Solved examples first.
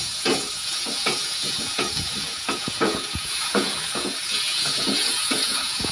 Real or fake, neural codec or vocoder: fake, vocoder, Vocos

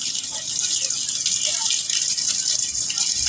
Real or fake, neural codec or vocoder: real